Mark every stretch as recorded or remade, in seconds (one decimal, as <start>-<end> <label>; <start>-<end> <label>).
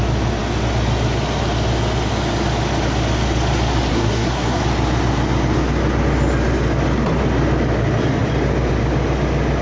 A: 0.0-3.9 recorded; 3.9-4.6 remade; 4.6-9.6 recorded